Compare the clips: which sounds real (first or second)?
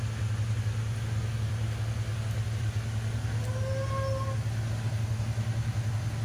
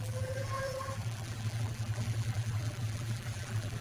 first